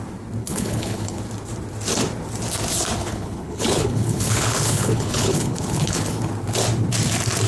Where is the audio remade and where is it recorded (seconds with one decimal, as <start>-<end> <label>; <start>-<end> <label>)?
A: 0.0-0.4 recorded; 0.4-1.2 remade; 1.2-3.0 recorded; 3.0-6.3 remade; 6.3-7.5 recorded